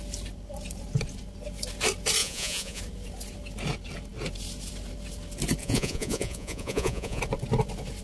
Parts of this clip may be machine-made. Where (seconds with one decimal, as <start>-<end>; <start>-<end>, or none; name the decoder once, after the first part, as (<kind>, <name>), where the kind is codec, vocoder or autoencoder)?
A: 2.2-2.8 (vocoder, Vocos); 5.6-7.2